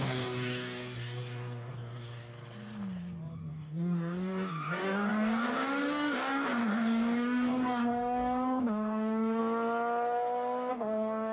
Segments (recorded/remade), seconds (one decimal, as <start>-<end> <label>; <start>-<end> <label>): 0.0-2.3 remade; 2.3-3.5 recorded; 3.5-9.4 remade; 9.4-10.7 recorded; 10.7-11.3 remade